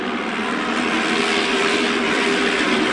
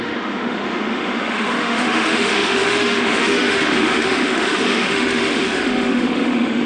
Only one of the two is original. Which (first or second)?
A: first